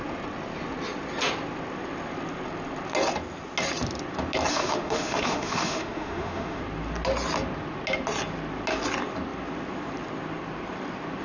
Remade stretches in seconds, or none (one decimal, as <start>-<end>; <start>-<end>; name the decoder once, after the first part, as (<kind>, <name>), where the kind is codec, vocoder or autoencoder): 4.5-6.6 (autoencoder, DAC-VAE)